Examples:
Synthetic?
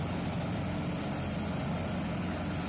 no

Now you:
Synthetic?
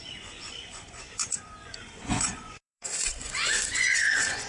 yes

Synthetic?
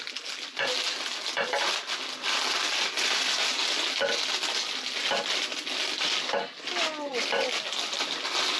no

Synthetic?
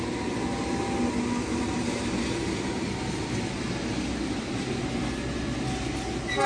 no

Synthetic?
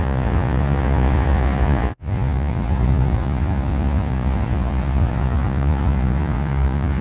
yes